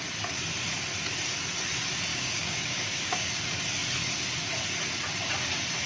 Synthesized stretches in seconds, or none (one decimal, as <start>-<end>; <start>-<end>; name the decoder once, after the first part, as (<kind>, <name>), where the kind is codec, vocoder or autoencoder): 2.1-3.4 (codec, DAC)